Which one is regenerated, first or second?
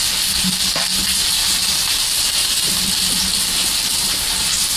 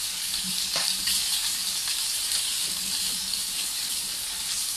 second